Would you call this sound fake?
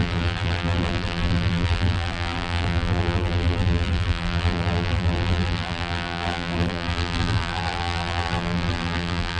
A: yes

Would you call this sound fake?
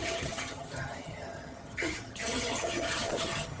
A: yes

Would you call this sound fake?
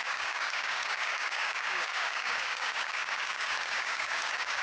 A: yes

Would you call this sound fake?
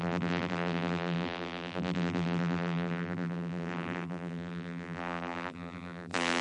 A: yes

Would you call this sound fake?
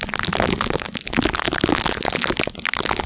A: no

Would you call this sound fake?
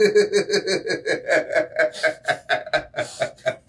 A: no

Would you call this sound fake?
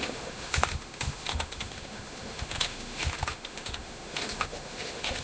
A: yes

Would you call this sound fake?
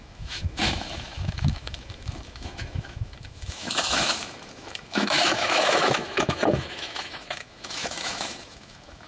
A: yes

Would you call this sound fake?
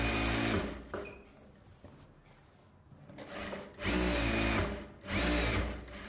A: no